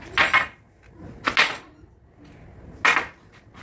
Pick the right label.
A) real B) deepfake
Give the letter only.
A